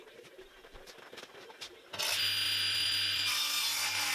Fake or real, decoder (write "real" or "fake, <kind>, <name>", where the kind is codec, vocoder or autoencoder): real